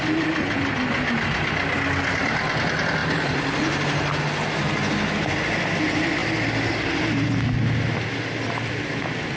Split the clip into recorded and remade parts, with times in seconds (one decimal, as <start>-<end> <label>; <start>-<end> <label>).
0.0-9.4 recorded